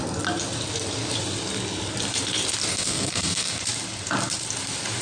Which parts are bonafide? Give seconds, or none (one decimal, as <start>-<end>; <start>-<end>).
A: 0.0-2.7; 3.6-5.0